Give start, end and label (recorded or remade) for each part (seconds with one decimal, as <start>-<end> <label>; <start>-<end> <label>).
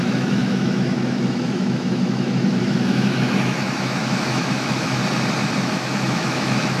0.0-5.0 remade; 5.0-5.6 recorded; 5.6-6.8 remade